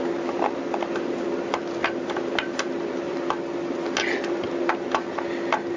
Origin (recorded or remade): recorded